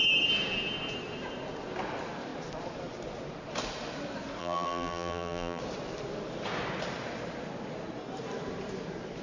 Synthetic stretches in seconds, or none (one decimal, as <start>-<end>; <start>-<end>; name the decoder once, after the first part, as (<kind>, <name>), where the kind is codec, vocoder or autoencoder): 4.4-5.6 (vocoder, BigVGAN v2)